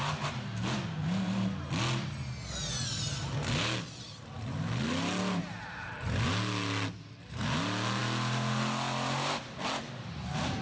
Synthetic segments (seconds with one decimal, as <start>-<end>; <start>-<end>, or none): none